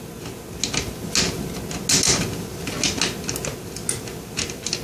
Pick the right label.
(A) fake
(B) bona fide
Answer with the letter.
B